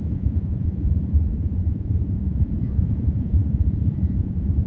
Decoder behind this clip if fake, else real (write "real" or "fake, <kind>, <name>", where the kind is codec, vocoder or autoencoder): fake, vocoder, Vocos